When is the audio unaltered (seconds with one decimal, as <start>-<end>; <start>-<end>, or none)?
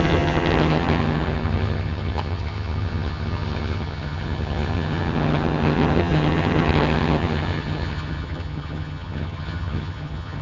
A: none